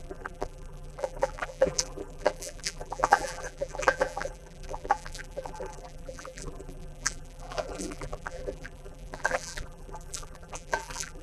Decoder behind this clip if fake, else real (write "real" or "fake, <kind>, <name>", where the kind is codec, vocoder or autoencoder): fake, vocoder, BigVGAN v2